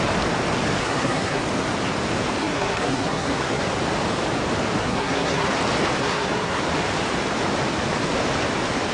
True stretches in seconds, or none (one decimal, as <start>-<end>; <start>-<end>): 0.0-0.8; 1.4-2.4; 3.6-4.8; 5.5-6.0; 6.6-8.9

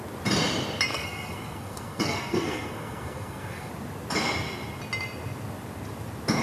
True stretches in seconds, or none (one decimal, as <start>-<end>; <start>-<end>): 0.0-0.9; 3.7-6.4

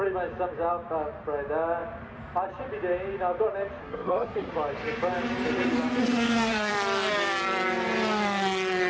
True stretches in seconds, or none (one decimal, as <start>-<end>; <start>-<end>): 0.0-3.8; 4.5-6.0; 6.7-8.9

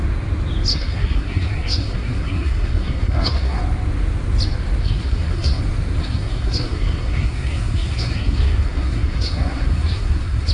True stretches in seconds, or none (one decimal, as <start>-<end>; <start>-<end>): 0.0-0.7; 3.6-4.8; 5.6-6.0

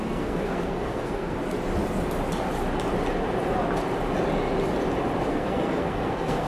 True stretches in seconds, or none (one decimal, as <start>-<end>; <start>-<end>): 1.4-5.3

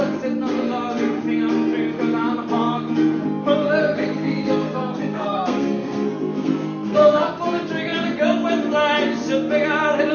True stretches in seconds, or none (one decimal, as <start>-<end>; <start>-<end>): 0.0-3.8; 7.4-10.1

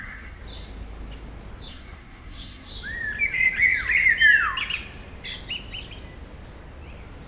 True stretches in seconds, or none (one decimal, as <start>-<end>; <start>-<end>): 0.4-1.7; 2.7-7.3

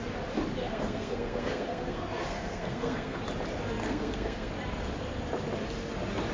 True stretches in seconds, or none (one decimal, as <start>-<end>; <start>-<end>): 0.0-0.6; 3.2-3.8; 4.5-6.3